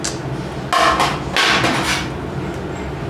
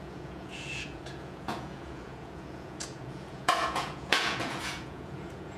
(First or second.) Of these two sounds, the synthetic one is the second